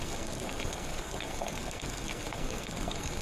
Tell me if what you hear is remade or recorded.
remade